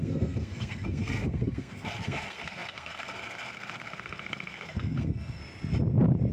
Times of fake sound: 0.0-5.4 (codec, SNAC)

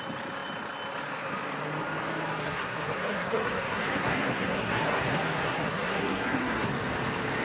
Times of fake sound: 2.4-6.7 (codec, SNAC)

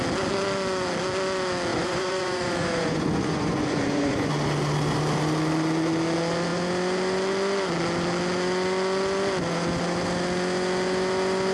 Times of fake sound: 1.7-4.3 (vocoder, Vocos)

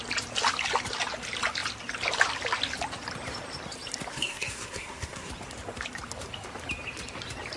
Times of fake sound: 4.1-5.3 (codec, SNAC)

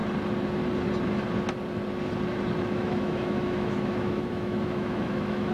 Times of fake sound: 2.6-5.5 (autoencoder, DAC-VAE)

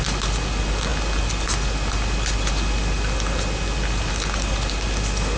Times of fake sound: none